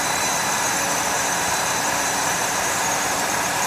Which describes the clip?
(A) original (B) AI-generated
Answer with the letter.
B